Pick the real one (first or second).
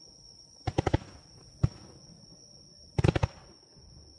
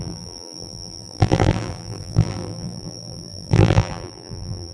first